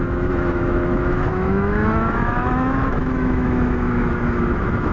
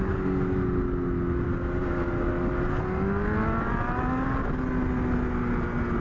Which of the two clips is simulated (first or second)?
first